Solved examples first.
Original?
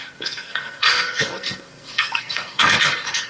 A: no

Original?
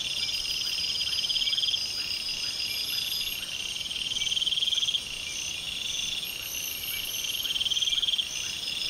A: yes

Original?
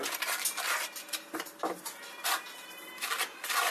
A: yes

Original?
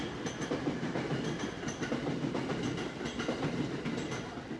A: yes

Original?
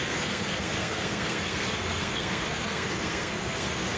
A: no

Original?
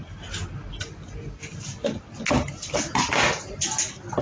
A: yes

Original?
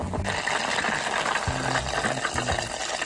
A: yes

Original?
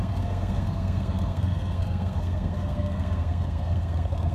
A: no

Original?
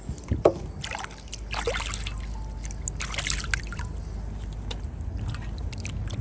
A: yes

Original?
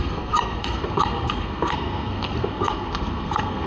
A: no